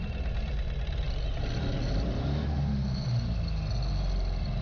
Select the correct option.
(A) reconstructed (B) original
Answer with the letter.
B